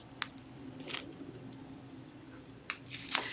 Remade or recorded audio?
recorded